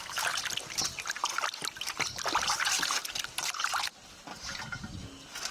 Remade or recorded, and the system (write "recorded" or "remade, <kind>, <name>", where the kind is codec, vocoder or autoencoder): recorded